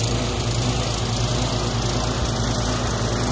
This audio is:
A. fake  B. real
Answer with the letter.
B